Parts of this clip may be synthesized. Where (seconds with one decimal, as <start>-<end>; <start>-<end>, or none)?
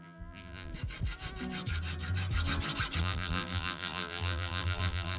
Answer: 0.0-0.7; 3.0-5.2